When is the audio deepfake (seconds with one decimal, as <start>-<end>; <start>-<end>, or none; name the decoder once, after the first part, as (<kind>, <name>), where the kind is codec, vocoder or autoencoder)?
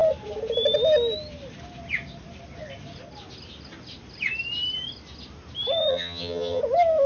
5.9-6.6 (vocoder, HiFi-GAN)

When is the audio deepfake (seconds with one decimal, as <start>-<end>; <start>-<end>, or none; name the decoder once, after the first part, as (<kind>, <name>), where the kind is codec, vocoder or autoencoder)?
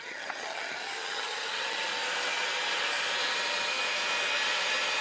0.0-1.9 (vocoder, HiFi-GAN)